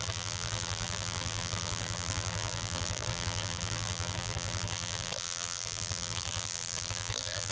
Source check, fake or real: fake